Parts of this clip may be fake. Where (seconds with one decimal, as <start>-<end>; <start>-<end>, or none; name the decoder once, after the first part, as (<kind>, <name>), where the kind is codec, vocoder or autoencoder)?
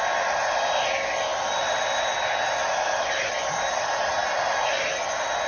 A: 1.3-3.3 (vocoder, BigVGAN v2)